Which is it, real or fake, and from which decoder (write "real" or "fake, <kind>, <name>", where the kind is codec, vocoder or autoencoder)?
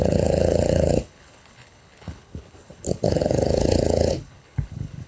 fake, codec, HILCodec